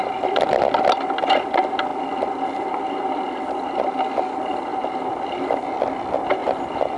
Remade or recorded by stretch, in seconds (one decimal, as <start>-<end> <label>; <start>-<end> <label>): 0.0-7.0 recorded